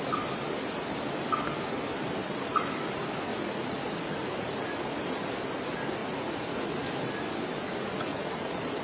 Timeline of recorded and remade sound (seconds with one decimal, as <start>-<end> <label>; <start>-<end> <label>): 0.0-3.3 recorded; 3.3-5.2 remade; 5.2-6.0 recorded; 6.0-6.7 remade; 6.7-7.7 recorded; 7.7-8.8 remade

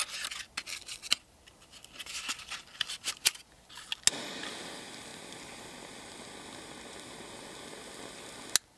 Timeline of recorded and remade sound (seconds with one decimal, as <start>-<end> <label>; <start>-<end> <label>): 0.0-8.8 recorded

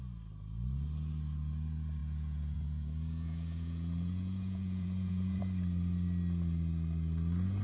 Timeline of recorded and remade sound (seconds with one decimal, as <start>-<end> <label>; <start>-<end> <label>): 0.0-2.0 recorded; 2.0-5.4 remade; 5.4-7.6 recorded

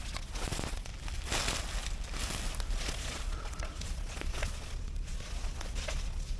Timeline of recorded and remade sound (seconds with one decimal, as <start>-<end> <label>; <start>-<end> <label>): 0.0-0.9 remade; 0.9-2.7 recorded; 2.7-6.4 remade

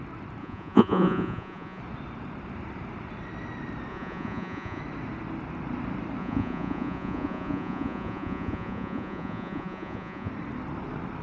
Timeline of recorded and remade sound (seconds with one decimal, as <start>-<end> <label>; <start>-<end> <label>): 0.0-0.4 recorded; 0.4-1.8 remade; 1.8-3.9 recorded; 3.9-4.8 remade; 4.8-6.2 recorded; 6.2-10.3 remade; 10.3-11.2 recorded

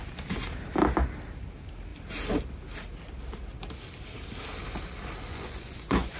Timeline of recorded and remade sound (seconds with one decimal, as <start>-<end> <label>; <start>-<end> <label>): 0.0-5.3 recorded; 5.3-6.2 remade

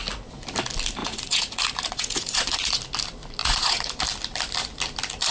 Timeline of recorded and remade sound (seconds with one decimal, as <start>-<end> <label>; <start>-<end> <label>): 0.0-1.0 recorded; 1.0-2.8 remade; 2.8-3.4 recorded; 3.4-4.0 remade; 4.0-5.3 recorded

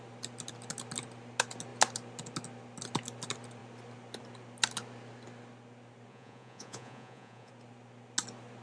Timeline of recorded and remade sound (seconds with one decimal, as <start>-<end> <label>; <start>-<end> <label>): 0.0-6.1 recorded; 6.1-7.5 remade; 7.5-8.6 recorded